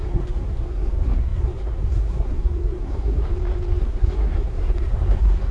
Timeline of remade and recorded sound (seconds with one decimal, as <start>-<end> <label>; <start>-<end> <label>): 0.0-3.3 remade; 3.3-3.8 recorded; 3.8-5.5 remade